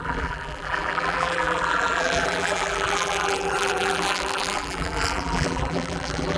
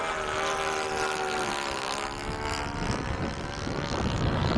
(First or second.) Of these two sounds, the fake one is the first